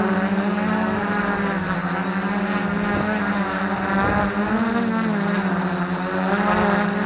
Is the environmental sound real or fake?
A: real